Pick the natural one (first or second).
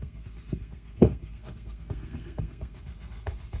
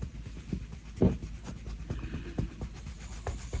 second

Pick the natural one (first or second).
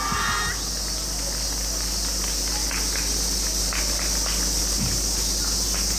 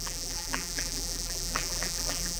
first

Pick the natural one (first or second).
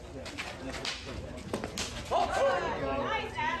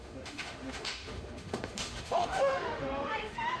first